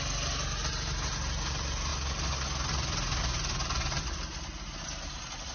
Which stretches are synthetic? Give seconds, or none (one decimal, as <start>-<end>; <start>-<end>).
none